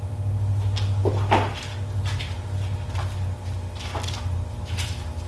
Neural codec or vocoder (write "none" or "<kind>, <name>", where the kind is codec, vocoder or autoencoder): none